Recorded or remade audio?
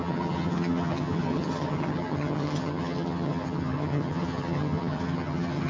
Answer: remade